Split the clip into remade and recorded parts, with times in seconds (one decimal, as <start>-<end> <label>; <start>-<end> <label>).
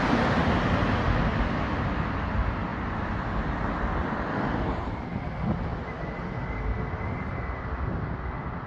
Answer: 0.0-8.7 recorded